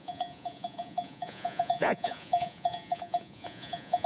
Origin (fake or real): fake